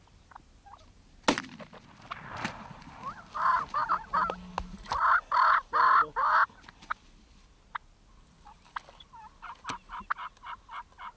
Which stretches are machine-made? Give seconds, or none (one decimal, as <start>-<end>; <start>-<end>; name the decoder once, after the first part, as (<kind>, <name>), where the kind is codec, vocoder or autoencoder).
none